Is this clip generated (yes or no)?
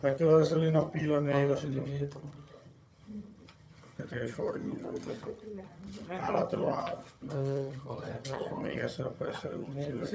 yes